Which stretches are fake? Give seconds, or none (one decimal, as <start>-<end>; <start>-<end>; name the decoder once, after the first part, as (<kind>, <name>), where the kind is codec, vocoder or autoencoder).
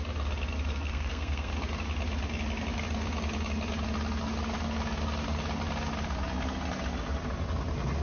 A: 0.9-1.5 (codec, SNAC)